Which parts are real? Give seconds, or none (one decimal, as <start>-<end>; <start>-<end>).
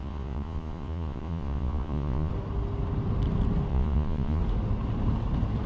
2.3-3.7; 4.4-5.7